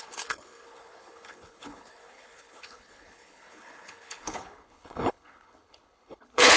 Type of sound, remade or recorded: remade